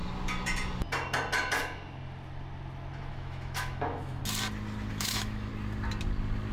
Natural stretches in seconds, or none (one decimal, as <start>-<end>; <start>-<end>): 0.0-3.1; 4.2-4.9; 5.5-6.5